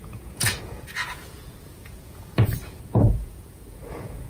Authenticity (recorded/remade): remade